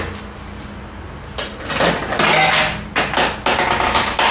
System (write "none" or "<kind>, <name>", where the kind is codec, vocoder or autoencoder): none